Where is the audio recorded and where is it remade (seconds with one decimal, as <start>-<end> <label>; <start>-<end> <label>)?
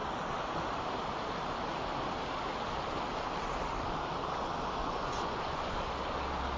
0.0-4.8 recorded; 4.8-5.8 remade; 5.8-6.6 recorded